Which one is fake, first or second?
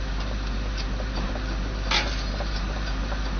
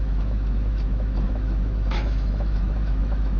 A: second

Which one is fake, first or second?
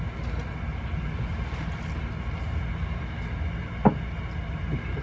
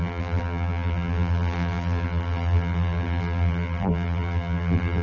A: second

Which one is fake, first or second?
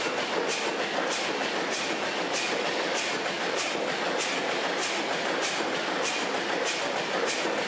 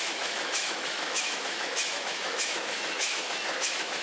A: second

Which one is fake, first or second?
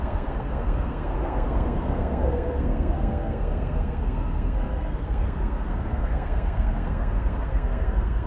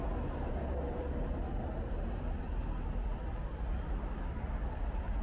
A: first